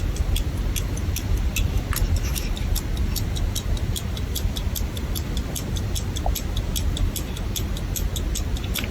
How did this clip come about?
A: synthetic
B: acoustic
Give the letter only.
B